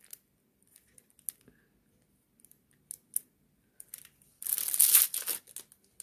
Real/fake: real